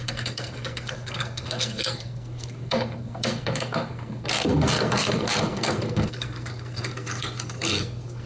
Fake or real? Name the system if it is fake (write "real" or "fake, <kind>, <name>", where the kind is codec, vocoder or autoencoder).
fake, codec, SNAC